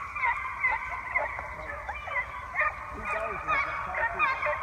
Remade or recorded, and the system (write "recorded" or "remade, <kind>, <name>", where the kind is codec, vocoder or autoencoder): recorded